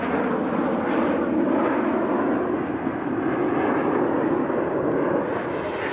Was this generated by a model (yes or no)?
no